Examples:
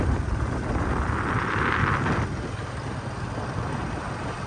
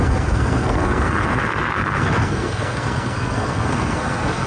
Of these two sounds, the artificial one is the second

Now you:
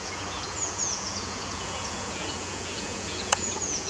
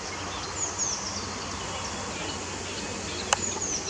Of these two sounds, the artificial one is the first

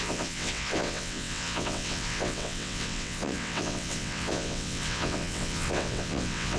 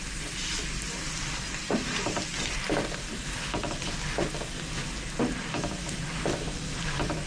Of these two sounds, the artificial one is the first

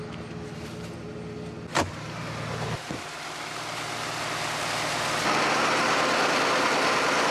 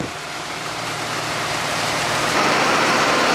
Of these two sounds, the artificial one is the second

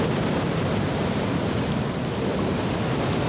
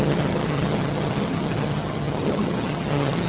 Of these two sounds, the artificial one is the second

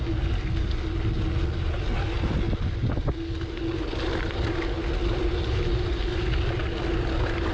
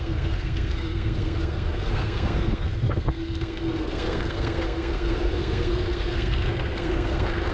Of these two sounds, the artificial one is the second